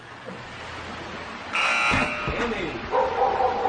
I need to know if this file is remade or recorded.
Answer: recorded